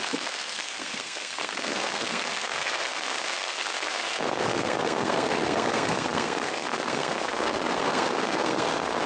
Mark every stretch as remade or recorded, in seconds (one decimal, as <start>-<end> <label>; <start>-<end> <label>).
0.0-9.1 remade